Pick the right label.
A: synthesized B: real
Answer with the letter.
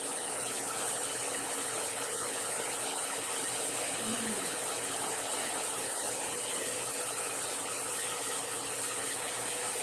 A